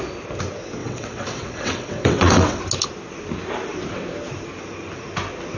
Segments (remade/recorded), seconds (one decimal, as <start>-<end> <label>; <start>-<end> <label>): 0.0-0.8 recorded; 0.8-2.6 remade; 2.6-5.6 recorded